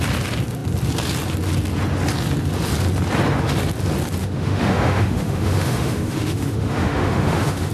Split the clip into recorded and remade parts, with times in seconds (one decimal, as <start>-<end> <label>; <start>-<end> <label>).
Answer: 0.0-4.2 recorded; 4.2-7.7 remade